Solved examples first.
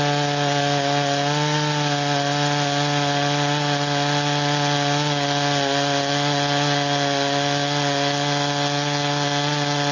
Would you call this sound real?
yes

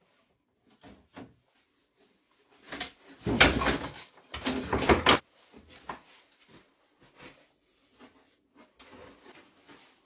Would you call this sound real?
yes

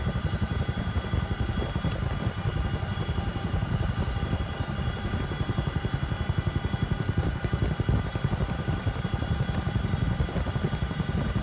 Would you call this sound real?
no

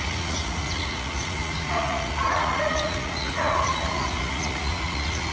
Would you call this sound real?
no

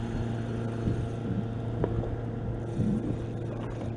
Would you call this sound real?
yes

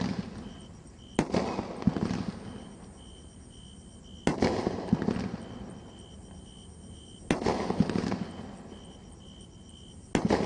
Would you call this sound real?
yes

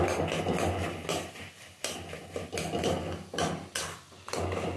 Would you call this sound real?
yes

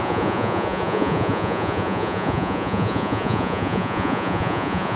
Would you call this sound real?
no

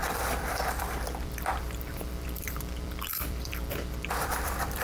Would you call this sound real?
no